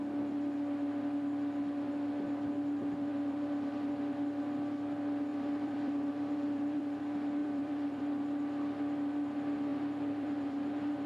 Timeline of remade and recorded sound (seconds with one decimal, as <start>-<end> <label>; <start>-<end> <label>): 0.0-3.1 recorded; 3.1-3.9 remade; 3.9-5.3 recorded; 5.3-7.0 remade; 7.0-7.4 recorded; 7.4-8.0 remade; 8.0-9.7 recorded; 9.7-11.1 remade

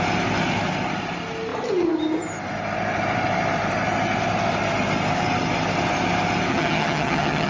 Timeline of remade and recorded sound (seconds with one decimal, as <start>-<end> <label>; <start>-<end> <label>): 0.0-6.5 recorded; 6.5-7.5 remade

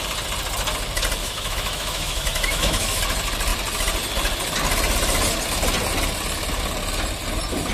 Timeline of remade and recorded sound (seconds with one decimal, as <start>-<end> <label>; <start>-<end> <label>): 0.0-1.2 recorded; 1.2-3.0 remade; 3.0-7.7 recorded

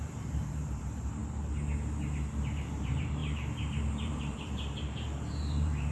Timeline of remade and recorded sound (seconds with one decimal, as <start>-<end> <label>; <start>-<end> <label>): 0.0-1.2 remade; 1.2-2.6 recorded; 2.6-5.9 remade

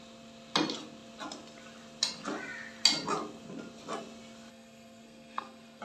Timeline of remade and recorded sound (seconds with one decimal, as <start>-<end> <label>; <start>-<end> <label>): 0.0-4.5 recorded; 4.5-5.8 remade

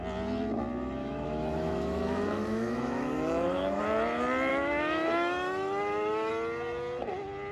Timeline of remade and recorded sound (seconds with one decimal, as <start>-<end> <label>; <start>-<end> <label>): 0.0-1.0 recorded; 1.0-3.8 remade; 3.8-4.5 recorded; 4.5-6.3 remade; 6.3-7.5 recorded

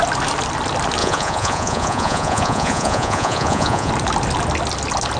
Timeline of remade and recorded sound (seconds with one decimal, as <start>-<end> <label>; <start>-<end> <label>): 0.0-1.0 recorded; 1.0-3.9 remade; 3.9-5.2 recorded